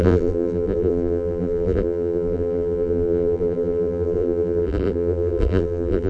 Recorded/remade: remade